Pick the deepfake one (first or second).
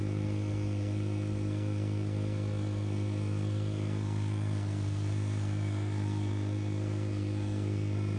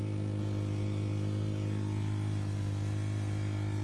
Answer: first